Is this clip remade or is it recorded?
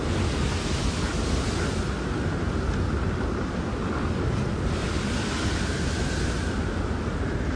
recorded